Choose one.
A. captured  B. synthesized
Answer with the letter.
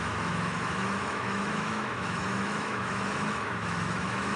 B